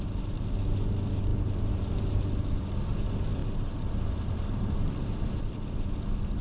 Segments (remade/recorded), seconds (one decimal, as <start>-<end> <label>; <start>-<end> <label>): 0.0-1.3 recorded; 1.3-1.9 remade; 1.9-3.4 recorded; 3.4-5.7 remade; 5.7-6.4 recorded